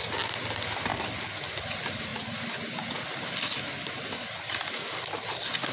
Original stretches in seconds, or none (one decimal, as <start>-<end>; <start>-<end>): 0.0-5.7